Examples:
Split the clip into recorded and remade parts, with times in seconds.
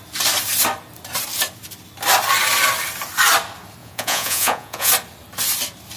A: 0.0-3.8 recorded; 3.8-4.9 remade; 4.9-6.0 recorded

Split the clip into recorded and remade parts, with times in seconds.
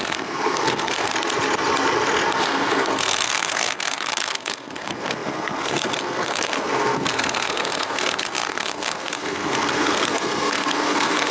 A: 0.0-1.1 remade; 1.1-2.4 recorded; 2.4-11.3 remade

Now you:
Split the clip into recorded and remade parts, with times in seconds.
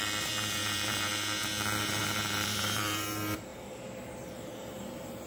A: 0.0-5.3 remade